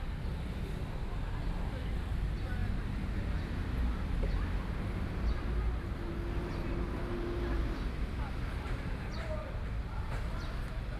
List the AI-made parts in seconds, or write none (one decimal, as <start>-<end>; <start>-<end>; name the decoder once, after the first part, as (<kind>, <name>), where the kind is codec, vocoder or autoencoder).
none